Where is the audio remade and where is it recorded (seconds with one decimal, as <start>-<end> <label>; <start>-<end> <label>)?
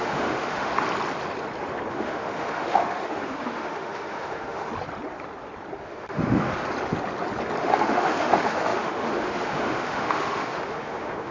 0.0-0.7 remade; 0.7-1.9 recorded; 1.9-4.7 remade; 4.7-5.8 recorded; 5.8-6.5 remade; 6.5-7.6 recorded; 7.6-11.3 remade